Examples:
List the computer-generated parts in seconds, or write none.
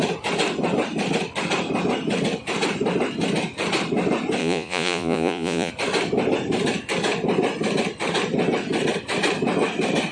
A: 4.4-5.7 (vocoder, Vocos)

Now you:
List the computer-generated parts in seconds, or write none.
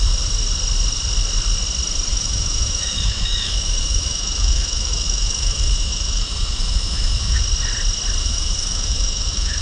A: 2.1-7.4 (autoencoder, DAC-VAE); 8.2-9.6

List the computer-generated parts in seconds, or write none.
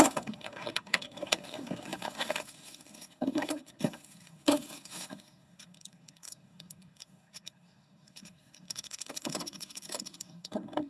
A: 0.0-10.9 (codec, SNAC)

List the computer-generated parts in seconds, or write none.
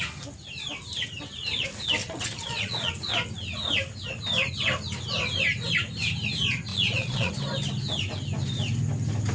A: 2.0-2.9 (vocoder, Vocos); 6.7-7.3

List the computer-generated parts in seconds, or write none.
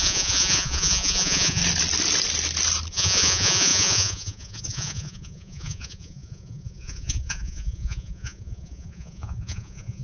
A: 0.0-1.6 (vocoder, Vocos); 2.9-10.0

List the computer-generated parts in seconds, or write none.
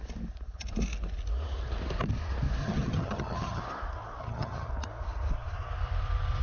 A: 2.6-3.6 (vocoder, HiFi-GAN); 4.2-4.7